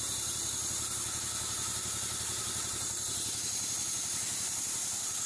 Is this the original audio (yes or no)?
no